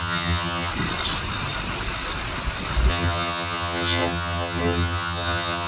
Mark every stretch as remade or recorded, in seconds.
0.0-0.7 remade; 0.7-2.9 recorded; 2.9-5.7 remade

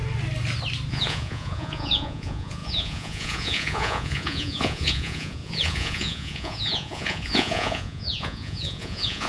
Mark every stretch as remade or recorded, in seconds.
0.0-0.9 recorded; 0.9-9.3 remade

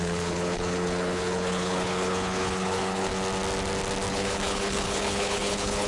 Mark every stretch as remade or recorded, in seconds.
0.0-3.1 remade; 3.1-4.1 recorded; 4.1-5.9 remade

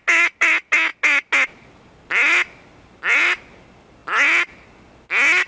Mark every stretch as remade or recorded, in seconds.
0.0-5.5 recorded